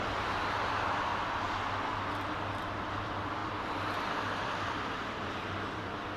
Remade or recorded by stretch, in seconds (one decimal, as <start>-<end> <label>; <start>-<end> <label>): 0.0-1.1 remade; 1.1-2.6 recorded; 2.6-6.2 remade